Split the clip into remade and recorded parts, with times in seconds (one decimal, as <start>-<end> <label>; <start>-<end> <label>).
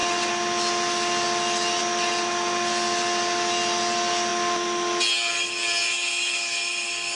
0.0-7.2 recorded